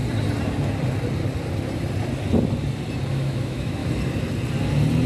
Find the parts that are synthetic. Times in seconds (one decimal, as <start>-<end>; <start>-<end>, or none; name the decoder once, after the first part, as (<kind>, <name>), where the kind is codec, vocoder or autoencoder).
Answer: 3.1-3.8 (autoencoder, DAC-VAE)